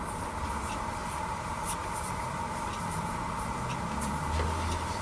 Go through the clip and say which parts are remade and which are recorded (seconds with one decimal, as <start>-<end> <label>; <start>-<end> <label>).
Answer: 0.0-1.0 recorded; 1.0-2.8 remade; 2.8-5.0 recorded